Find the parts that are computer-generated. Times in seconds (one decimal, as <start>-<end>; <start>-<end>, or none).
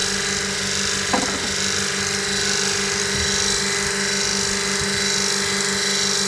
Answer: none